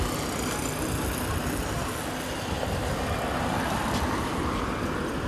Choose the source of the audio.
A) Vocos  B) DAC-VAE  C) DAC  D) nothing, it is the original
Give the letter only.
D